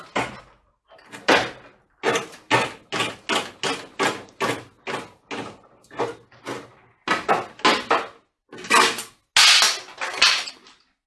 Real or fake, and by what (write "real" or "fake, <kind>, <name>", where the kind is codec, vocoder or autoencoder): real